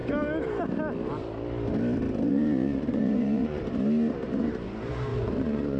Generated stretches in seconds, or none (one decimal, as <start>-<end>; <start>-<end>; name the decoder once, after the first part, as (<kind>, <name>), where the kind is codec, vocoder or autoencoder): 2.3-3.6 (vocoder, Vocos); 5.1-5.8